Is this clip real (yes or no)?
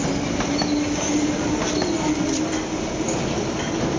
yes